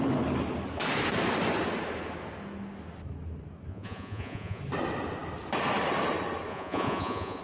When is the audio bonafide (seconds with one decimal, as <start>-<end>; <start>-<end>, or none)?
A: 0.0-3.7; 4.6-6.5